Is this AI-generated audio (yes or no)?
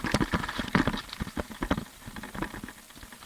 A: no